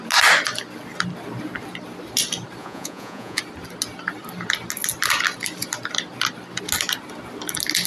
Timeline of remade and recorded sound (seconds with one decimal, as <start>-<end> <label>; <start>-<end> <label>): 0.0-2.6 recorded; 2.6-3.4 remade; 3.4-7.9 recorded